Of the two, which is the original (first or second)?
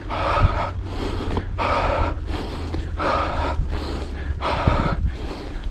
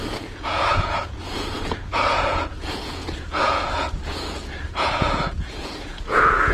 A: first